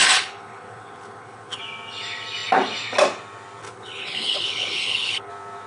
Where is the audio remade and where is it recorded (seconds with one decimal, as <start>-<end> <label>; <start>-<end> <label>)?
0.0-1.6 remade; 1.6-3.6 recorded; 3.6-5.3 remade; 5.3-5.7 recorded